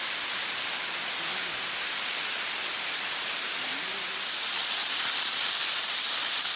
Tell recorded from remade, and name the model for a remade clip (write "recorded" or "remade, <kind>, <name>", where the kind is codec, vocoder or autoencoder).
recorded